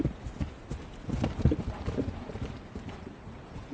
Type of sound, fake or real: real